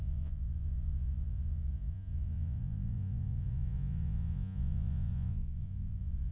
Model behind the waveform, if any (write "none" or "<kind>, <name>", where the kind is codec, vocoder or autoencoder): vocoder, Vocos